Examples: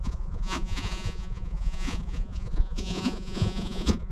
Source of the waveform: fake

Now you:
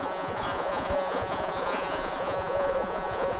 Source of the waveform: fake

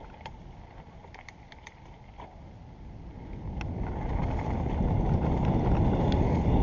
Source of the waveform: real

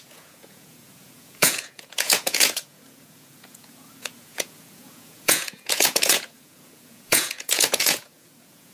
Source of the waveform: fake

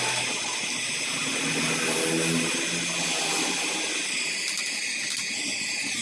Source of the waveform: real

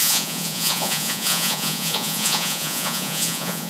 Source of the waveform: fake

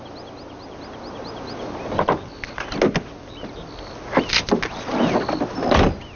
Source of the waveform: real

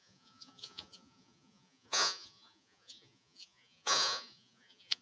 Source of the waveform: fake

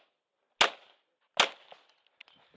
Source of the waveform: real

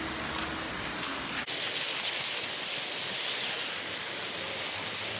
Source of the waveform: real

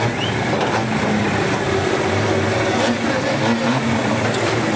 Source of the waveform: real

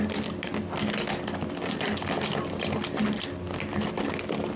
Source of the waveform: real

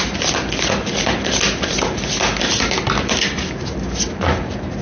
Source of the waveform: real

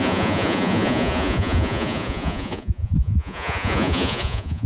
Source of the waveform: fake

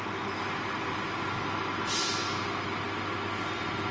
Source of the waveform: real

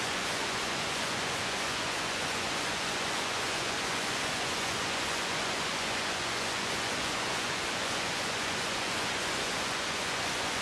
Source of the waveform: fake